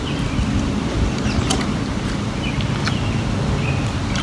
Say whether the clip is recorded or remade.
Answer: recorded